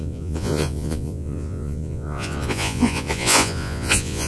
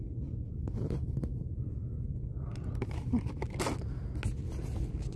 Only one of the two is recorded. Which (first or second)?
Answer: second